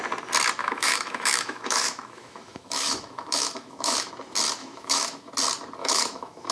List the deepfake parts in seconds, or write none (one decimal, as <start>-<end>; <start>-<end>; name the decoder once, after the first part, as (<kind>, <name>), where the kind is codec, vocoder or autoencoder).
0.6-4.1 (autoencoder, DAC-VAE); 4.6-5.3; 5.8-6.5